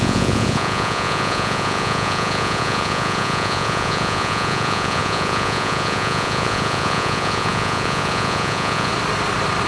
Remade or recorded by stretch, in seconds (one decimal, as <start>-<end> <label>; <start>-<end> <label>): 0.0-8.9 remade; 8.9-9.7 recorded